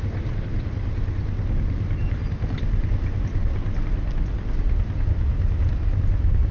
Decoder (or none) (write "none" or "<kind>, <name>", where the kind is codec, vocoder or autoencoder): none